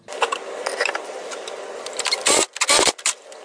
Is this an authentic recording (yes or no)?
yes